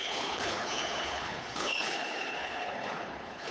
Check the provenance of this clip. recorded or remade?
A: remade